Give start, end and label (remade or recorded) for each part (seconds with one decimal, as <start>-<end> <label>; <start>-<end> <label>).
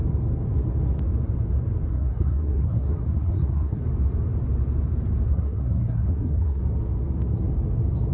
0.0-1.9 recorded; 1.9-3.8 remade; 3.8-5.3 recorded; 5.3-6.6 remade; 6.6-8.1 recorded